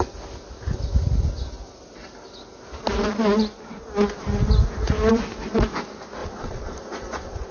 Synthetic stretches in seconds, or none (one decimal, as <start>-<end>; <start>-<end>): 6.2-7.5